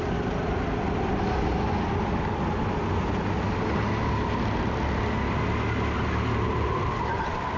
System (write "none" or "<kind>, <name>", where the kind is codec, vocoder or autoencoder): none